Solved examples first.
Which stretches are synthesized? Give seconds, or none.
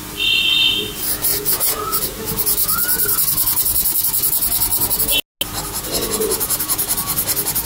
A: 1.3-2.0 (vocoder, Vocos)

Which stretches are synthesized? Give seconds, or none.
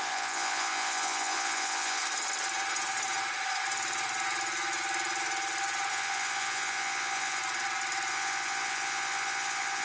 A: 0.0-2.0 (vocoder, Vocos); 5.9-7.4; 8.1-9.8